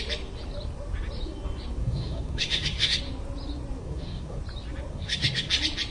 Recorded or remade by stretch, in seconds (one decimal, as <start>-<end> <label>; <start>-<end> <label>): 0.0-1.8 recorded; 1.8-3.0 remade; 3.0-3.8 recorded; 3.8-4.4 remade; 4.4-4.9 recorded; 4.9-5.5 remade; 5.5-5.9 recorded